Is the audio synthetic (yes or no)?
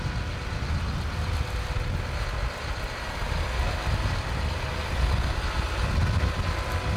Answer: no